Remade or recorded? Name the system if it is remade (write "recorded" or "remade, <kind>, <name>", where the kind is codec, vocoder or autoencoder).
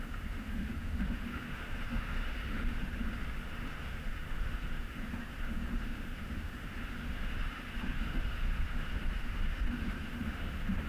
remade, autoencoder, DAC-VAE